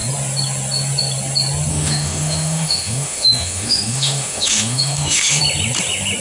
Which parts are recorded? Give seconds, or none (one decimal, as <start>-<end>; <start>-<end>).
0.0-1.7; 5.4-6.2